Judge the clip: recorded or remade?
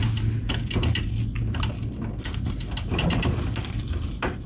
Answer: recorded